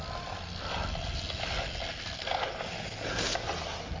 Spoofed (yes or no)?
no